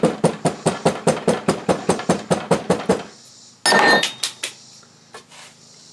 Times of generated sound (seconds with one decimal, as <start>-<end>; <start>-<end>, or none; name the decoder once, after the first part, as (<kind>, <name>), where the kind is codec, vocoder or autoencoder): none